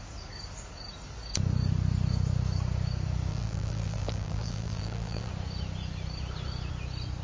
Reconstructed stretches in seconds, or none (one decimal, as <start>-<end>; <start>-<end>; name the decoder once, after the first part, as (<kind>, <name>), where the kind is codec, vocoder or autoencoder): 3.3-5.3 (vocoder, BigVGAN v2)